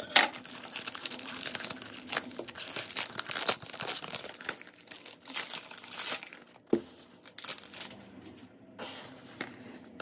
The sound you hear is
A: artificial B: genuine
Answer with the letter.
B